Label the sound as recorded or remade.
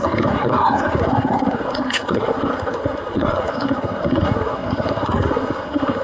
remade